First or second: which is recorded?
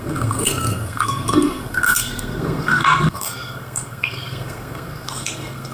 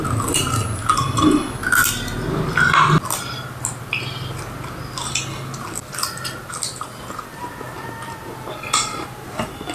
second